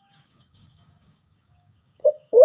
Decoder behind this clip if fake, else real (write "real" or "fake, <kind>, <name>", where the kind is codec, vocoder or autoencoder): fake, codec, DAC